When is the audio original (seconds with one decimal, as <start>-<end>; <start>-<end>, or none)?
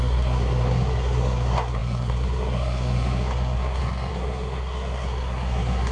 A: none